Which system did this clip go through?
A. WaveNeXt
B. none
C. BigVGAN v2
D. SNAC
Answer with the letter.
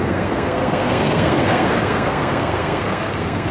D